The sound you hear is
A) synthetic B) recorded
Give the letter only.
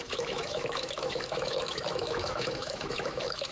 A